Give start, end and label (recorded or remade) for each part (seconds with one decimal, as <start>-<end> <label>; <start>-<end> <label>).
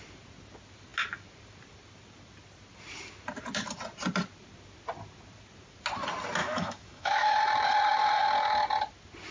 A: 0.0-6.4 recorded; 6.4-7.4 remade; 7.4-9.3 recorded